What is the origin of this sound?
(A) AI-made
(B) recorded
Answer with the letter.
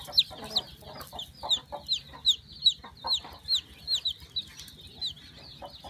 B